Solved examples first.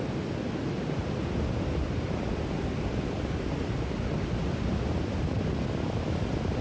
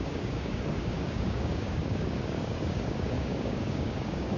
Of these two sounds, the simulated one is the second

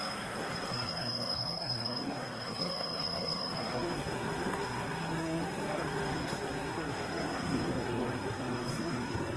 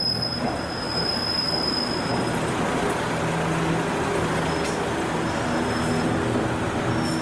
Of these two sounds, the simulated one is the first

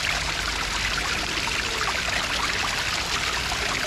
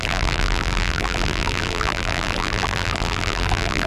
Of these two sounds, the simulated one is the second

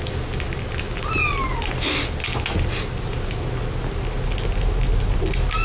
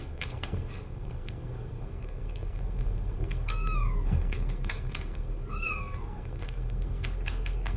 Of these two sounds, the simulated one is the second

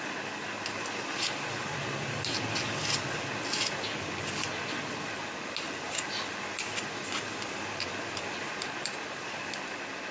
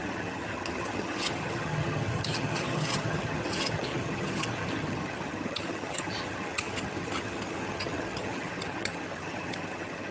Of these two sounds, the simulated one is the second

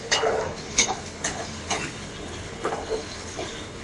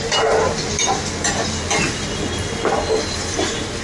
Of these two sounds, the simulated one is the first